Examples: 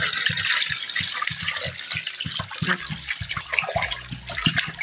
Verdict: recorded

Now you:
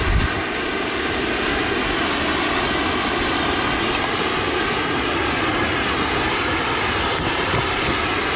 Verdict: recorded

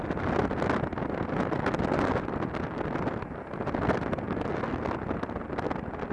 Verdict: recorded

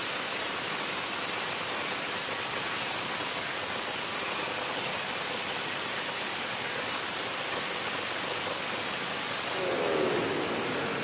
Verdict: recorded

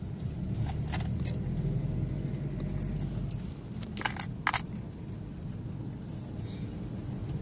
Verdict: recorded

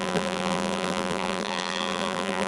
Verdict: remade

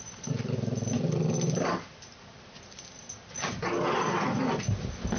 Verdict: recorded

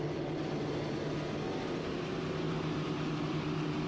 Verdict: recorded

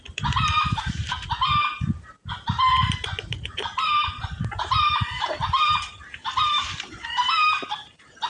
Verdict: remade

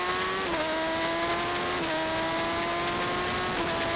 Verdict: recorded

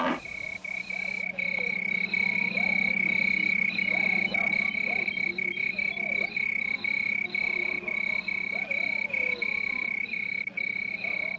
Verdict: recorded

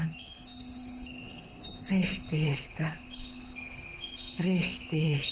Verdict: remade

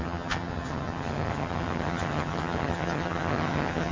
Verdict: remade